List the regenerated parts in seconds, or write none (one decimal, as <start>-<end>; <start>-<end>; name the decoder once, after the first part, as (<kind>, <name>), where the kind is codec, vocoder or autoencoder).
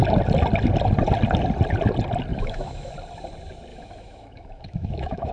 2.3-2.9 (autoencoder, DAC-VAE); 3.7-5.3